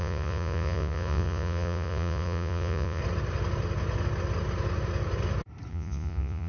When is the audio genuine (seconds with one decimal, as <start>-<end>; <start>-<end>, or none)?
3.0-5.7